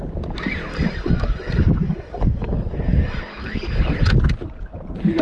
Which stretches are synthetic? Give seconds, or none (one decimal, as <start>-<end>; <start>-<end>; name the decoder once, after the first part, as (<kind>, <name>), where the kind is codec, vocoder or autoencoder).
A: 0.7-3.8 (codec, DAC)